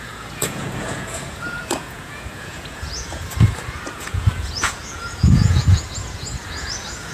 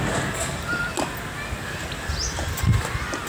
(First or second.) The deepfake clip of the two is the first